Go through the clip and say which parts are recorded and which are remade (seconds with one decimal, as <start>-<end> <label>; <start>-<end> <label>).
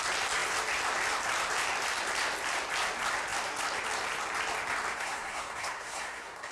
0.0-4.9 recorded; 4.9-6.5 remade